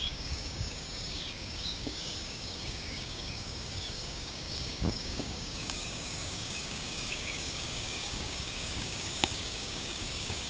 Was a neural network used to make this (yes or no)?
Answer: yes